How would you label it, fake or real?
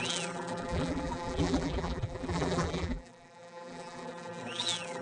fake